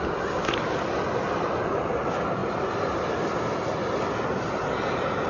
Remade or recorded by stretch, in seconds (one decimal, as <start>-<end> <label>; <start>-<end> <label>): 0.0-5.3 recorded